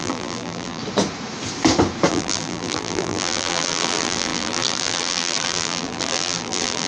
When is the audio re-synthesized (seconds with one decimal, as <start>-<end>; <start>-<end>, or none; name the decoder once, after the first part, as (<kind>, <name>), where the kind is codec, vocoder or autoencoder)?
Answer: 0.0-0.8 (vocoder, BigVGAN v2); 2.1-6.9